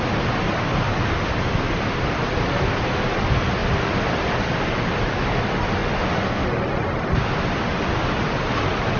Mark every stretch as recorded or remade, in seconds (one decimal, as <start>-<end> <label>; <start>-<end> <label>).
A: 0.0-9.0 recorded